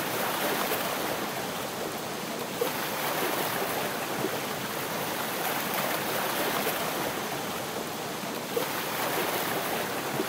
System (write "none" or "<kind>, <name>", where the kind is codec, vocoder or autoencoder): none